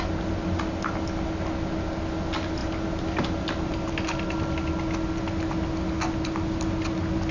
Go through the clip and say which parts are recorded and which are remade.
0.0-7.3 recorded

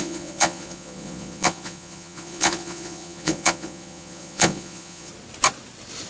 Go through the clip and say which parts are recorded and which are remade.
0.0-5.1 remade; 5.1-6.1 recorded

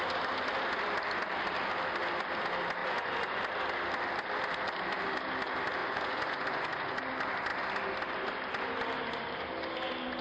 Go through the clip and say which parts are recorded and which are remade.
0.0-2.8 recorded; 2.8-3.4 remade; 3.4-5.8 recorded; 5.8-7.0 remade; 7.0-10.2 recorded

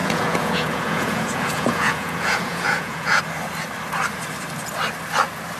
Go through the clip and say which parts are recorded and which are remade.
0.0-3.2 remade; 3.2-5.6 recorded

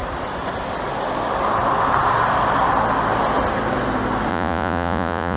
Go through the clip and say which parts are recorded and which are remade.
0.0-4.3 recorded; 4.3-5.4 remade

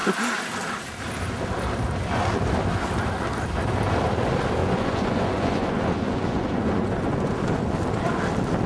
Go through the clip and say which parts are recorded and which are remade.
0.0-4.6 recorded; 4.6-7.3 remade; 7.3-8.7 recorded

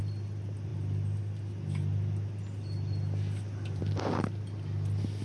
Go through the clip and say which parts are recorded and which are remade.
0.0-5.2 recorded

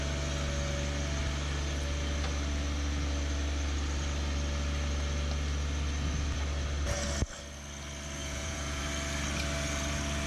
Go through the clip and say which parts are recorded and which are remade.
0.0-8.2 recorded; 8.2-8.8 remade; 8.8-10.3 recorded